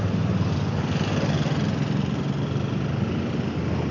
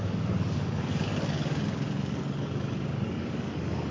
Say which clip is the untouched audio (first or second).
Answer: first